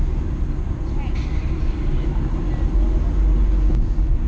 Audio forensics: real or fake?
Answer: real